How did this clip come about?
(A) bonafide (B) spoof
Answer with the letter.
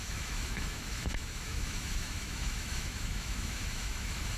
B